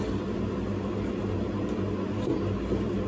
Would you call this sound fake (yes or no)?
no